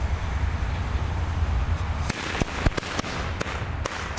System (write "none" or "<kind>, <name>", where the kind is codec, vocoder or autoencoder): none